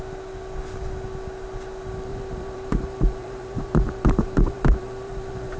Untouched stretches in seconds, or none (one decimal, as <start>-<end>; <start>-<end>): 0.0-2.1